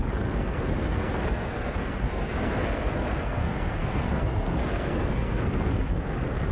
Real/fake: fake